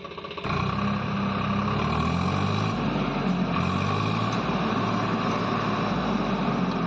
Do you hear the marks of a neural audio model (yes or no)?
no